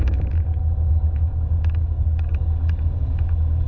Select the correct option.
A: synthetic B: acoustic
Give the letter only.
A